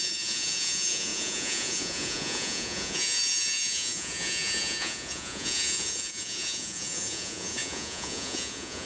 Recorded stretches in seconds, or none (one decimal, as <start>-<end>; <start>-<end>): none